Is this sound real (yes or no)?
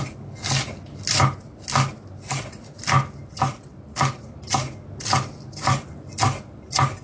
yes